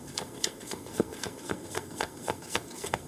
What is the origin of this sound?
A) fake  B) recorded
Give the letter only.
A